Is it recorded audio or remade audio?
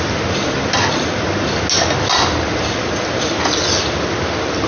recorded